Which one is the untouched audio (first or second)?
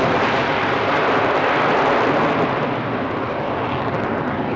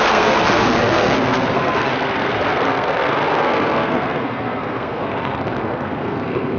first